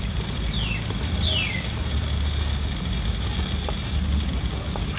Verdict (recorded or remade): recorded